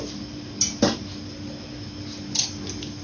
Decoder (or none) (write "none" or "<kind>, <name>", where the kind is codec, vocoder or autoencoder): none